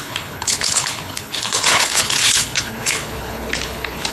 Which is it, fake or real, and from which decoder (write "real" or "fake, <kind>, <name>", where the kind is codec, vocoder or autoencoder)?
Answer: fake, codec, HILCodec